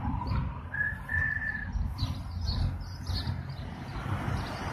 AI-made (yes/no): no